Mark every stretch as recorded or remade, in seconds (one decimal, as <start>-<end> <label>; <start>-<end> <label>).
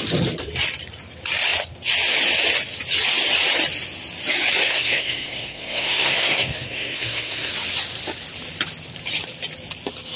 0.0-4.6 recorded; 4.6-7.5 remade; 7.5-10.2 recorded